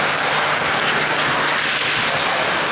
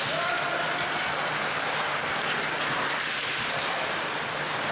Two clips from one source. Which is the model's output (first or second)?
second